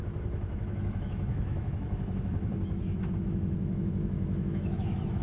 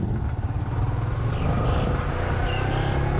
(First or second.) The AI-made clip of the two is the first